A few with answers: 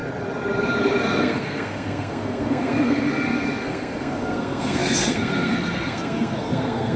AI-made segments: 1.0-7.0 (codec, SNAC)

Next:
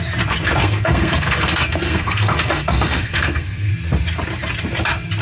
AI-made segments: 0.6-3.7 (codec, SNAC)

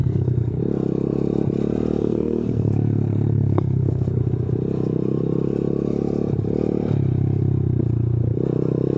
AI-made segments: 0.0-0.6 (codec, SNAC); 2.0-4.2

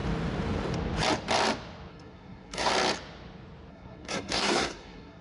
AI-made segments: 1.9-2.7 (codec, SNAC); 3.7-5.2

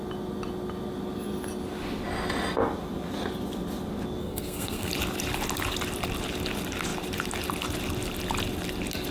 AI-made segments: 4.2-4.9 (codec, SNAC)

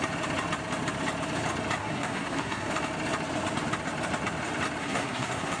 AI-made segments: 1.8-2.7 (codec, SNAC); 4.8-5.6

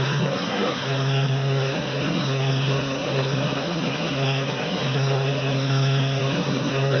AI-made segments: 0.0-7.0 (codec, SNAC)